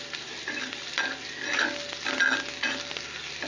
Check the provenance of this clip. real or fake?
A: real